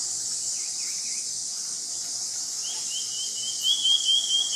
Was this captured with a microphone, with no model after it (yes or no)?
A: yes